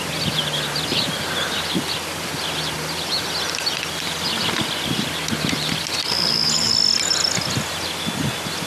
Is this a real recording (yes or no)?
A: yes